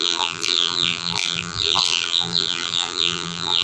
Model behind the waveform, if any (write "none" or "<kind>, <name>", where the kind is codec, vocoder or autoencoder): vocoder, BigVGAN v2